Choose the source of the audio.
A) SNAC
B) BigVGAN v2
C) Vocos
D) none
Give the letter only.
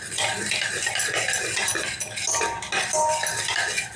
D